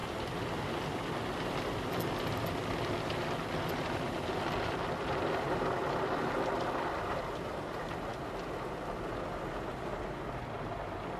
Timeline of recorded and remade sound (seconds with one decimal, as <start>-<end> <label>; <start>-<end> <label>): 0.0-11.2 recorded